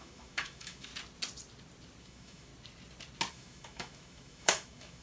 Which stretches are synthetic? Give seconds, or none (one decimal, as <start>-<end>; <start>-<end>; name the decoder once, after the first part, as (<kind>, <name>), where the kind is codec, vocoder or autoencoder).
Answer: 0.0-0.9 (autoencoder, DAC-VAE); 2.0-2.5; 3.3-5.0